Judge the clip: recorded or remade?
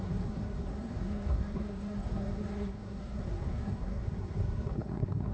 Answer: remade